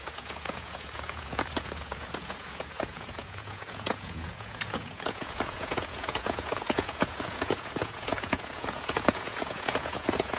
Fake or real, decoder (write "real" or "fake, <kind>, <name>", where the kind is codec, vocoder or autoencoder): fake, vocoder, Vocos